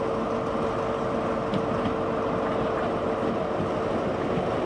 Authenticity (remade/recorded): recorded